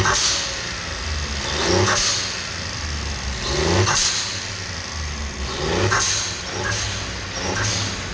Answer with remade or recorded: recorded